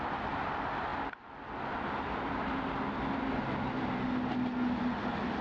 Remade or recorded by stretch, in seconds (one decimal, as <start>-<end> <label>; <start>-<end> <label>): 0.0-5.4 recorded